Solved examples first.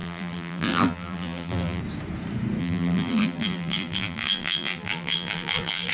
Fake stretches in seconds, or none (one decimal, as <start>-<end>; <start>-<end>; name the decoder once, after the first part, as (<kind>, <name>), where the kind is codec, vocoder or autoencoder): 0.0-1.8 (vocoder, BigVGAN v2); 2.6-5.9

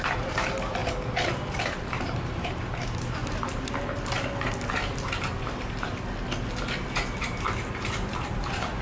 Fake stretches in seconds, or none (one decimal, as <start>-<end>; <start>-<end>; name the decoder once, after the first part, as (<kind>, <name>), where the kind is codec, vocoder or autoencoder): 0.0-0.8 (vocoder, BigVGAN v2); 1.8-3.2; 7.2-8.8

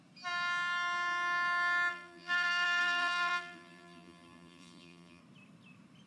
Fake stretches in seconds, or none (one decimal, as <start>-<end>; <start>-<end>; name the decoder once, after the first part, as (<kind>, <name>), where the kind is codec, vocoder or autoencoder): 1.9-5.2 (vocoder, BigVGAN v2)

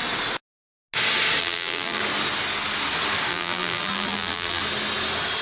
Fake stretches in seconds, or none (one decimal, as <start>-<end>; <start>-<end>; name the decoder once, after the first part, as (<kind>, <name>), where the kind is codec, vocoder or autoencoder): 1.4-2.0 (vocoder, BigVGAN v2); 3.3-4.6